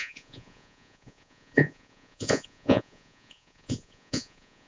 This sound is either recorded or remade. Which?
remade